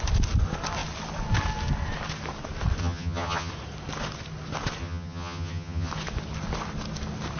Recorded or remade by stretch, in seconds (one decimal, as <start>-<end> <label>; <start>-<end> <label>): 0.0-2.8 recorded; 2.8-3.5 remade; 3.5-4.8 recorded; 4.8-5.9 remade; 5.9-7.4 recorded

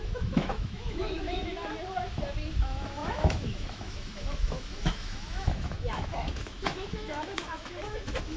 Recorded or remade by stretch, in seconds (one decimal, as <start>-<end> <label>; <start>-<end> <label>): 0.0-1.5 remade; 1.5-2.6 recorded; 2.6-8.4 remade

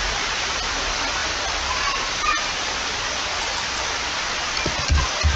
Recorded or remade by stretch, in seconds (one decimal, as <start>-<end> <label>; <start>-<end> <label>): 0.0-5.4 remade

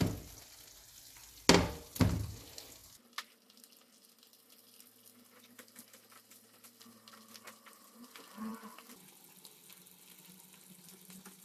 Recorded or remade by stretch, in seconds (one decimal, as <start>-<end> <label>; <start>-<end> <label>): 0.0-11.4 recorded

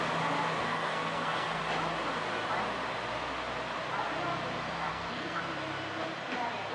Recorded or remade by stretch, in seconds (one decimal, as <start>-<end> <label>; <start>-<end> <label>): 0.0-0.6 recorded; 0.6-1.6 remade; 1.6-4.9 recorded; 4.9-5.4 remade; 5.4-6.7 recorded